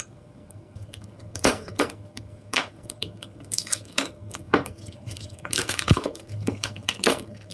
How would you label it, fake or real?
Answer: fake